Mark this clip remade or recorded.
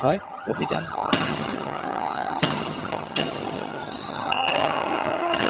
remade